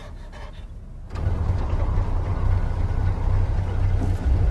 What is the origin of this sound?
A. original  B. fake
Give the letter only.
A